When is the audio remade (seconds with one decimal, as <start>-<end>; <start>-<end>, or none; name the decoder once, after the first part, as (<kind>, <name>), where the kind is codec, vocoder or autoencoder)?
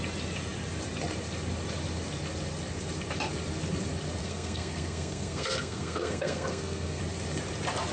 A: 4.2-7.0 (codec, SNAC)